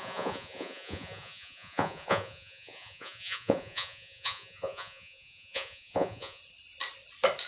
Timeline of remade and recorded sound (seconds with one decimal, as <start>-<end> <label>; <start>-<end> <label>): 0.0-6.4 remade; 6.4-7.5 recorded